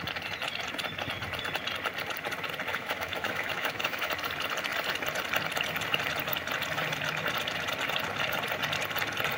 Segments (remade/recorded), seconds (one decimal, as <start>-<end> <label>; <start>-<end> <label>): 0.0-2.7 recorded; 2.7-4.1 remade; 4.1-9.4 recorded